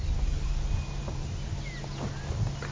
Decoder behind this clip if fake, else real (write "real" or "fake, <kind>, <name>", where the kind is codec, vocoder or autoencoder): real